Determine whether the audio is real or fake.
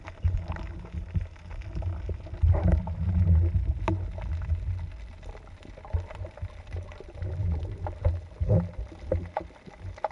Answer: real